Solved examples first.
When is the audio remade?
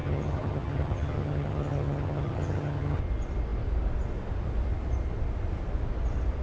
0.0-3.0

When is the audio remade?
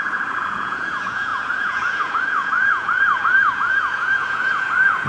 0.0-5.1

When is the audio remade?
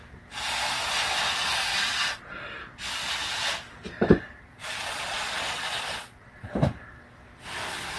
1.7-2.6; 4.5-6.5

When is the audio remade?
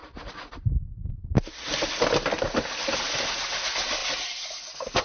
none